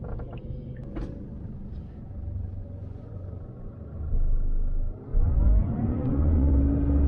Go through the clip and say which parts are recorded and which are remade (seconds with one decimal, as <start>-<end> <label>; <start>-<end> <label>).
0.0-2.5 recorded; 2.5-3.9 remade; 3.9-5.1 recorded; 5.1-6.5 remade; 6.5-7.1 recorded